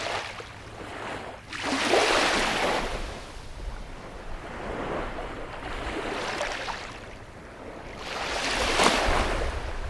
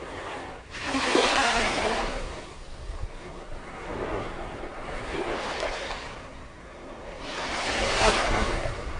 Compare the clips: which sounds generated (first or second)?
second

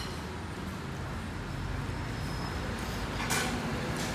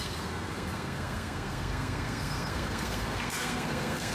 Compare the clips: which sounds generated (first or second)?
second